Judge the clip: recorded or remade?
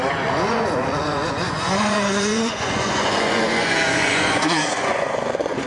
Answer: remade